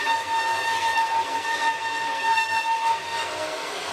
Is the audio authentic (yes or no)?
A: no